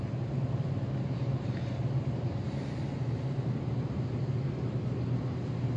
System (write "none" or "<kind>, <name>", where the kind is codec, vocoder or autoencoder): none